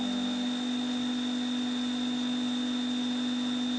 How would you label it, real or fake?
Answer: real